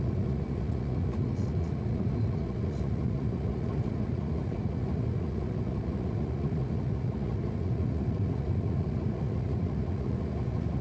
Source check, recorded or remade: remade